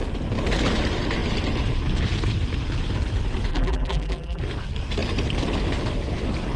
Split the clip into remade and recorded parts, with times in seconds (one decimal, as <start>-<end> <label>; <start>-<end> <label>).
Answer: 0.0-3.5 recorded; 3.5-4.4 remade; 4.4-6.6 recorded